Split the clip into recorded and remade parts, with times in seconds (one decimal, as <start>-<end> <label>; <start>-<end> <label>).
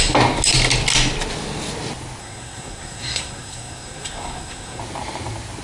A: 0.0-2.2 recorded; 2.2-4.8 remade; 4.8-5.6 recorded